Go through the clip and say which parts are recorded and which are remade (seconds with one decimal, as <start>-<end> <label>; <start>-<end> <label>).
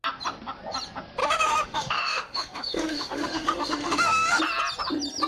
0.0-1.2 recorded; 1.2-4.4 remade; 4.4-5.3 recorded